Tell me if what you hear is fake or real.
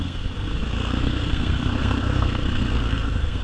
fake